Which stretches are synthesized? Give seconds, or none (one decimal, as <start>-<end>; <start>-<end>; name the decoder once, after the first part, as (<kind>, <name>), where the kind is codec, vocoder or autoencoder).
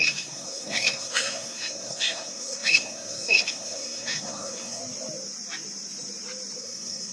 0.0-4.8 (codec, SNAC); 6.6-7.1